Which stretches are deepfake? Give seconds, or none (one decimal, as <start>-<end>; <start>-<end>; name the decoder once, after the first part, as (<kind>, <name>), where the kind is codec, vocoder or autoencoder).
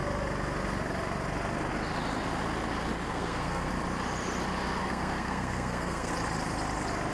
3.1-3.7 (codec, SNAC); 4.8-6.1